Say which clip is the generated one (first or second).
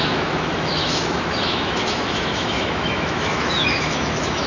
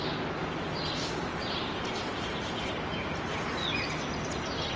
first